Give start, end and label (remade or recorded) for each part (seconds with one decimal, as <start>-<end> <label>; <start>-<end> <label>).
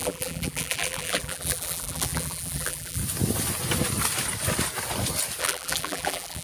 0.0-3.0 remade; 3.0-5.4 recorded; 5.4-6.4 remade